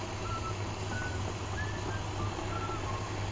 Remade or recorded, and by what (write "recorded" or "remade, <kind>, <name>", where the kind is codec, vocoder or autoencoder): recorded